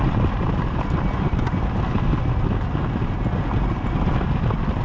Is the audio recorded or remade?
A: recorded